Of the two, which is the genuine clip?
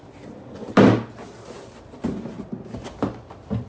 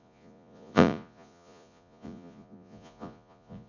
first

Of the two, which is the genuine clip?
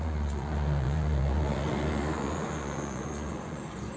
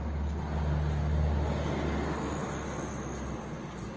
second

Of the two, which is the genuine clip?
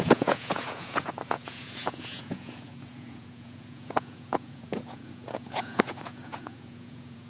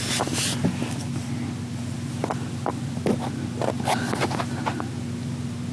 second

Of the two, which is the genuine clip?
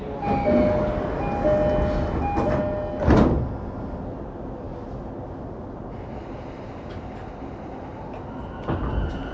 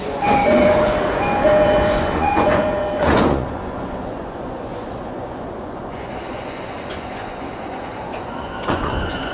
first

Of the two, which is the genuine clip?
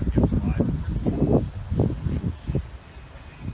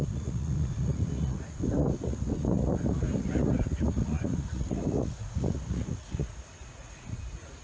first